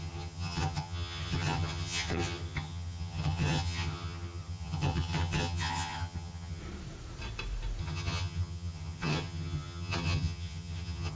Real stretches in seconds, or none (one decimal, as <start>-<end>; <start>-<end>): 6.6-7.8